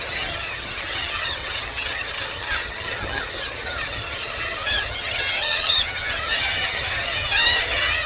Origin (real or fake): fake